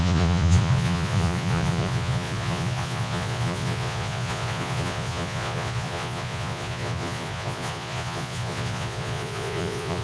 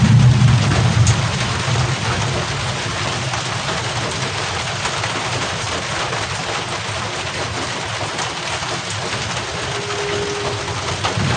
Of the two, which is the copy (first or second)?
first